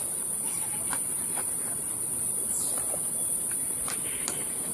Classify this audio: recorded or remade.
remade